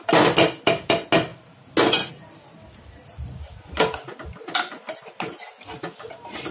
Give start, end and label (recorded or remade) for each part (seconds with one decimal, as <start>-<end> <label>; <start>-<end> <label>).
0.0-6.5 recorded